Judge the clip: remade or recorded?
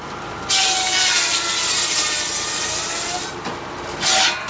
recorded